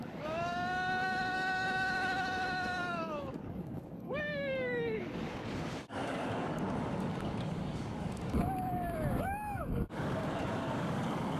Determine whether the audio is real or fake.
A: fake